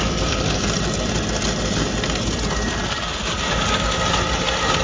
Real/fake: real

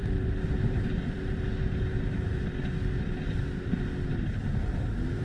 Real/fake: real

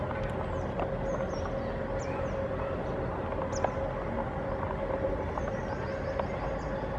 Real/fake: real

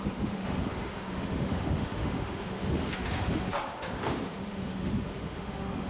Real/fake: fake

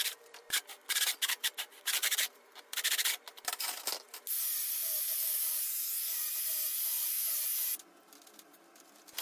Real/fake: real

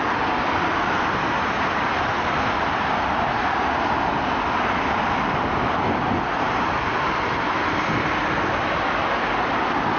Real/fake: real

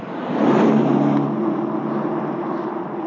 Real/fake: real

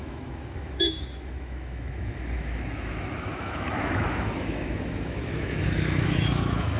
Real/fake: fake